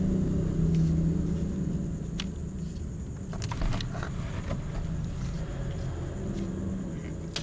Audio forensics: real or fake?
real